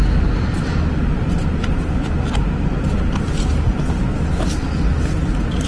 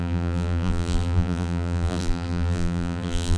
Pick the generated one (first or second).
second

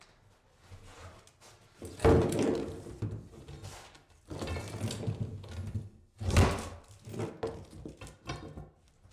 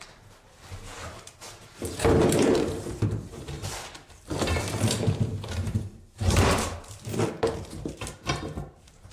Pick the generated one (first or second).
second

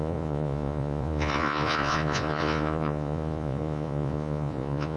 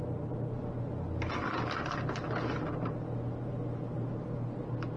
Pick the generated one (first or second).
first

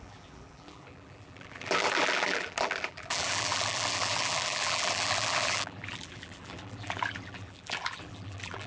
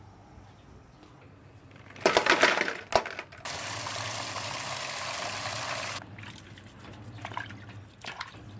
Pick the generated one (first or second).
first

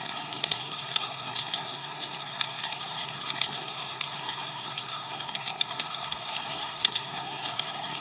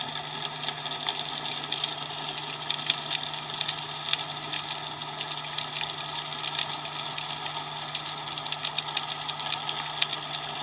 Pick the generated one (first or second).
first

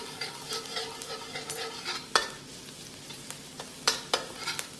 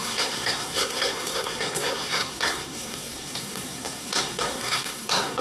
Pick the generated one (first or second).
second